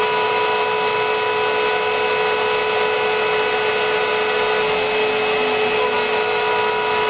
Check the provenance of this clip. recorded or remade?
recorded